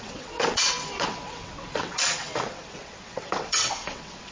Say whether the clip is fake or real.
fake